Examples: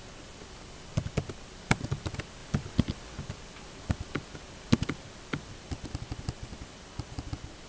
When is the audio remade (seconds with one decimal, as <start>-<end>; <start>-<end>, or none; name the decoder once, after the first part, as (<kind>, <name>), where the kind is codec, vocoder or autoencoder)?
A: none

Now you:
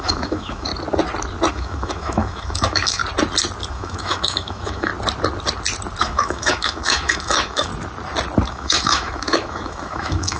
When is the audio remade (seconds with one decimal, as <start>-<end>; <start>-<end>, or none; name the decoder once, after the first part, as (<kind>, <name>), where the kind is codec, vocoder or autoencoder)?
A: 0.0-0.7 (autoencoder, DAC-VAE); 1.5-3.0; 3.7-4.9; 6.0-7.7; 8.5-10.4

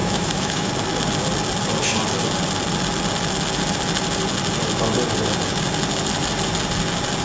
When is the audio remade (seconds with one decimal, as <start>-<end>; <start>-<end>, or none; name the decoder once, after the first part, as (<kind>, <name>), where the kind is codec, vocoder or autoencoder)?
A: 0.0-0.7 (autoencoder, DAC-VAE)